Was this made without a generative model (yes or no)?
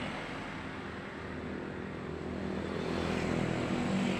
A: yes